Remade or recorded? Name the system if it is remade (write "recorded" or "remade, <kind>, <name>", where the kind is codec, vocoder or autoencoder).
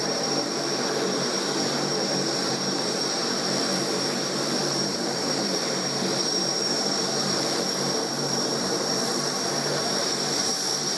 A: remade, vocoder, BigVGAN v2